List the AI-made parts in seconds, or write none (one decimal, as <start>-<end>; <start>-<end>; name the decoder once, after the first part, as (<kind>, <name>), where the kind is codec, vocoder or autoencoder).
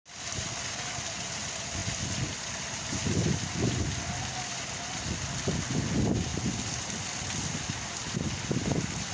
none